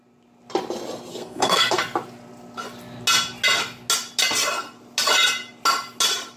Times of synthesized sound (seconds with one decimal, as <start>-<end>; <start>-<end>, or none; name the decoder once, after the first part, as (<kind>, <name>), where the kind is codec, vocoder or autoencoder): 1.1-1.8 (codec, SNAC)